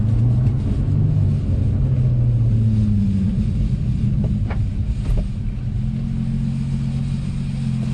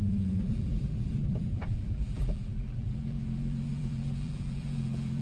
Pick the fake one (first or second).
second